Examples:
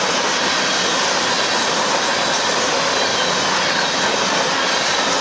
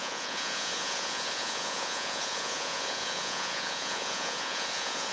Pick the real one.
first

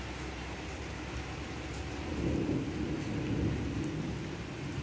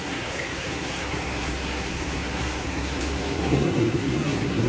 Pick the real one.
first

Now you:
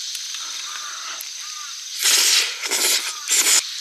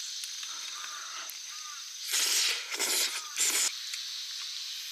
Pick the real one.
second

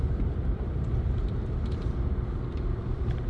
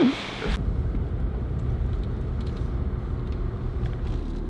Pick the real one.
second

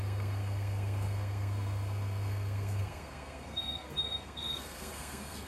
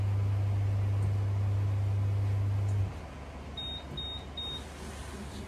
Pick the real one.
second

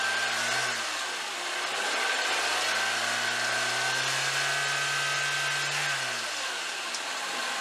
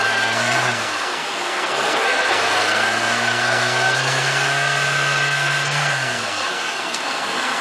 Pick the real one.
first